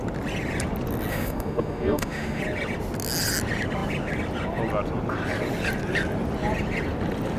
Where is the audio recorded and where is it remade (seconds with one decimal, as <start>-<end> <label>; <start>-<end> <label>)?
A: 0.0-1.1 recorded; 1.1-2.4 remade; 2.4-7.4 recorded